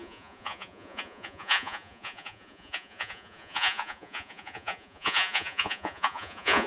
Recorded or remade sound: remade